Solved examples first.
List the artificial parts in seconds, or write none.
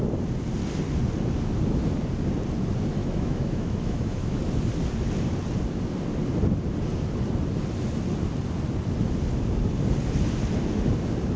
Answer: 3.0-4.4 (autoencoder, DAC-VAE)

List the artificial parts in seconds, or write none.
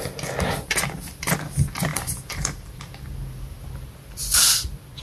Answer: 1.9-2.8 (vocoder, BigVGAN v2)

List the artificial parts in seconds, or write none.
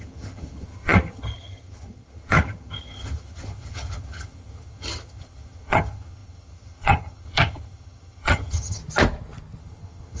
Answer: 0.0-8.8 (vocoder, HiFi-GAN); 9.6-10.2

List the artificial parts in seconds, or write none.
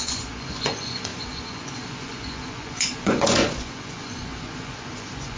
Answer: 0.0-5.4 (vocoder, Vocos)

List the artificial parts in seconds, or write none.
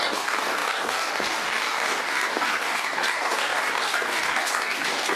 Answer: 0.0-5.2 (codec, DAC)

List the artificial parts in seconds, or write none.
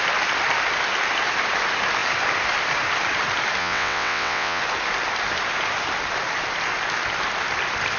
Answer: 3.6-4.6 (vocoder, WaveNeXt)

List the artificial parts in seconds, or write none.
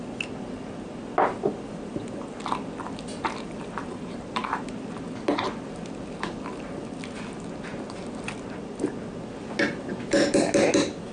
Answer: 3.8-4.7 (vocoder, BigVGAN v2)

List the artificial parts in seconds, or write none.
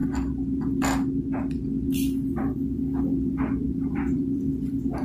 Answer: 3.0-5.0 (vocoder, BigVGAN v2)